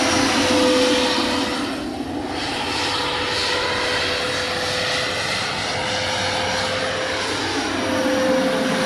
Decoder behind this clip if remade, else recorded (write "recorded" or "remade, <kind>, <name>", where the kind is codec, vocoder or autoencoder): recorded